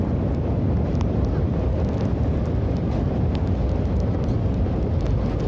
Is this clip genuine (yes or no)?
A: yes